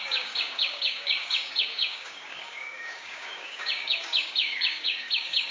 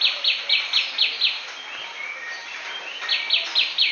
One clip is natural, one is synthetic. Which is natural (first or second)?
second